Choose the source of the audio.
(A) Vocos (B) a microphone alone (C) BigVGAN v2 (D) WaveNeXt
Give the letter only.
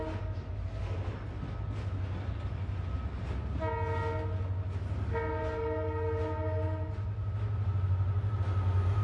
B